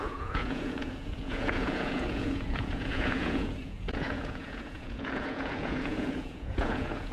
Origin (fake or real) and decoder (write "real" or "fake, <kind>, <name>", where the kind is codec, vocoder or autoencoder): fake, vocoder, Vocos